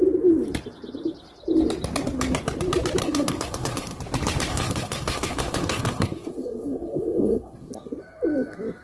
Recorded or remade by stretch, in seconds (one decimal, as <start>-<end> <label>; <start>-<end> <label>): 0.0-3.0 recorded; 3.0-4.0 remade; 4.0-4.5 recorded; 4.5-7.7 remade; 7.7-8.8 recorded